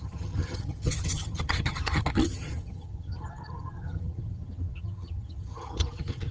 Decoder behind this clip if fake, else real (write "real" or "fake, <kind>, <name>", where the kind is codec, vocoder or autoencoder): fake, vocoder, HiFi-GAN